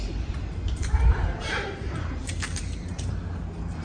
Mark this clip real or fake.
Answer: fake